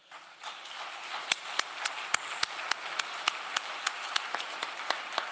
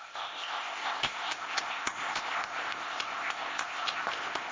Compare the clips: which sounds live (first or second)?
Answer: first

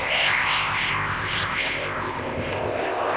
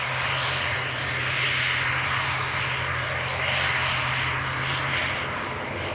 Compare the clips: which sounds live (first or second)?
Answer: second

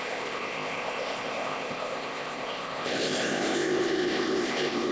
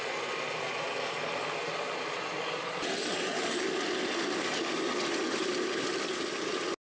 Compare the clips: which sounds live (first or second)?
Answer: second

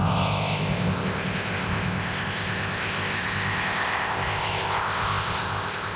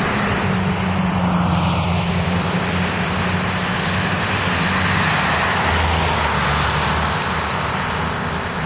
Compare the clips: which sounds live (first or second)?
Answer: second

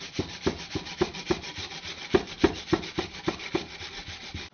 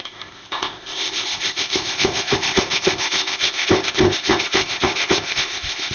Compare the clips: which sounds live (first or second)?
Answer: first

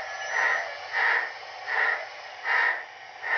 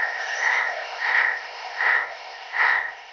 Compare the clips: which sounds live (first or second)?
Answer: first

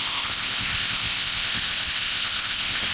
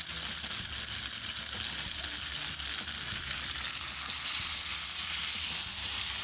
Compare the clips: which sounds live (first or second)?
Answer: second